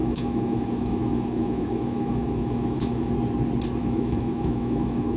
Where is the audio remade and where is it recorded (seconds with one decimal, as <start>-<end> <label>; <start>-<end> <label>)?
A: 0.0-3.1 remade; 3.1-3.8 recorded; 3.8-5.2 remade